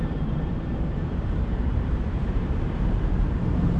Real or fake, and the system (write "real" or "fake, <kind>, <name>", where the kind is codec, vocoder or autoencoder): fake, vocoder, BigVGAN v2